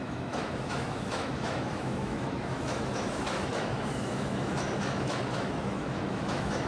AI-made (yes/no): yes